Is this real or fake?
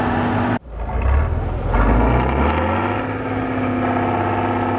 real